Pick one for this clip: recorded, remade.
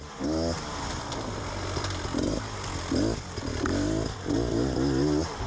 recorded